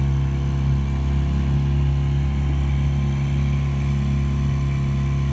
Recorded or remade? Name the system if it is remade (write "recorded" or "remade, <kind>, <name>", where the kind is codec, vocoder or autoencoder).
recorded